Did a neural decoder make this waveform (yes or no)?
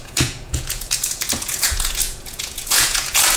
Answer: yes